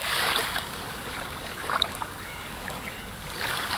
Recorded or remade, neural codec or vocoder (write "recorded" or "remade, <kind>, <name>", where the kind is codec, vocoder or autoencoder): remade, codec, DAC